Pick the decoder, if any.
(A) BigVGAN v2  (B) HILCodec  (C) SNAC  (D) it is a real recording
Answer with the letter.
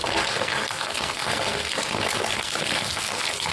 C